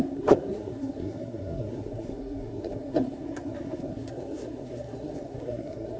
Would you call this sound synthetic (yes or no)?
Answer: yes